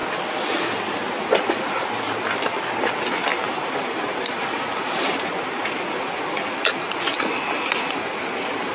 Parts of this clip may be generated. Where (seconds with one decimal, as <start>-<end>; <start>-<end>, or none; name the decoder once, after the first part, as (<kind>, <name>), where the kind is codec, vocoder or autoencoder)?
3.3-5.7 (vocoder, BigVGAN v2)